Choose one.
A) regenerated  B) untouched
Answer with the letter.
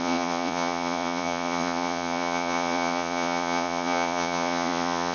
A